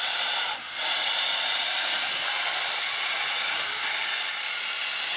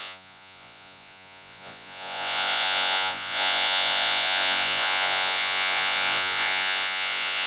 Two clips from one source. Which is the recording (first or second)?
first